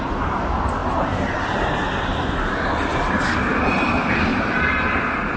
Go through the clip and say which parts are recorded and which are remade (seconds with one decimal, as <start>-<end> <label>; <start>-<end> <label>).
0.0-0.8 recorded; 0.8-1.7 remade; 1.7-4.3 recorded; 4.3-5.0 remade; 5.0-5.4 recorded